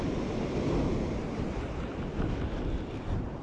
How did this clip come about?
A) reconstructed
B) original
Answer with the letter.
B